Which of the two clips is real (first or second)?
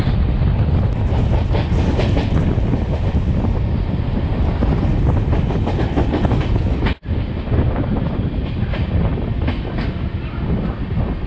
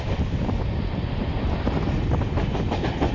first